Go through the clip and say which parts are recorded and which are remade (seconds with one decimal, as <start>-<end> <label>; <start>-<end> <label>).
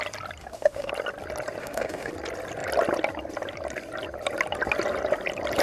0.0-0.4 recorded; 0.4-0.9 remade; 0.9-1.6 recorded; 1.6-2.1 remade; 2.1-5.6 recorded